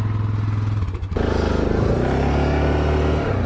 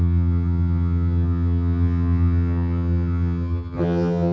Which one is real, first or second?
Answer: first